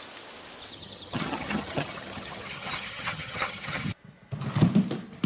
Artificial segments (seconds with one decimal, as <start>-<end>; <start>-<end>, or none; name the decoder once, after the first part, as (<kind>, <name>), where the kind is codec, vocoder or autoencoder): 0.7-3.9 (vocoder, HiFi-GAN)